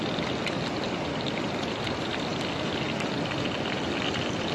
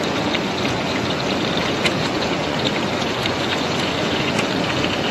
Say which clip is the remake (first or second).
second